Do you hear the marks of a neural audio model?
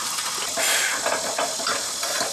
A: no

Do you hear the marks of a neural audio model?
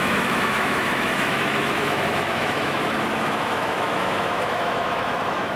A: yes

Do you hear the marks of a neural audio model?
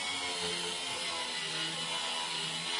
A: no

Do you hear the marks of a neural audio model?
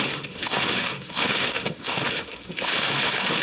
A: yes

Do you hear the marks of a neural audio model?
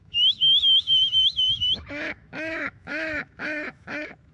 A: yes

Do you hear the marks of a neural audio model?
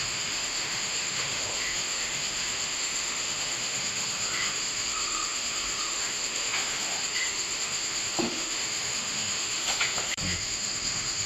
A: yes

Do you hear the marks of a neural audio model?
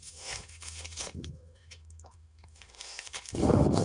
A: yes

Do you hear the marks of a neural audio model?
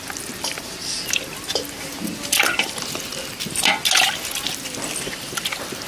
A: no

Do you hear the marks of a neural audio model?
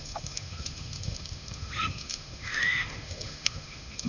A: yes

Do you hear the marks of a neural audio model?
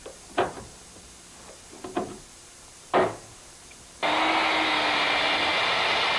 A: no